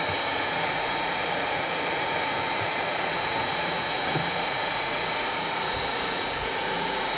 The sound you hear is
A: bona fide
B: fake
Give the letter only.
B